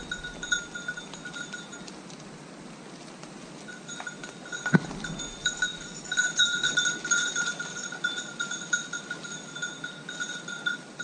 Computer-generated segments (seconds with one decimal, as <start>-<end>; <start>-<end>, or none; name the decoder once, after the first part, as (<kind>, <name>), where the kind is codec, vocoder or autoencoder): none